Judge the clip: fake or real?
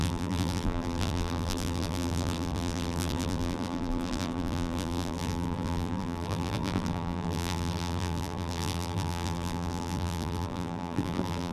fake